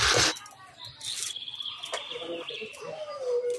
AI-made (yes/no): no